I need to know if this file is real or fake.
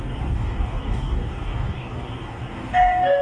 fake